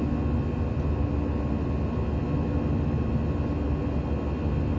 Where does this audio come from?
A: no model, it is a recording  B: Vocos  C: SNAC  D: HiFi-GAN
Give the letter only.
A